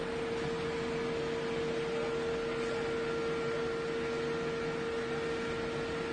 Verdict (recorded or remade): recorded